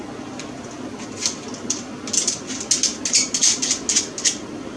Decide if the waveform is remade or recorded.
recorded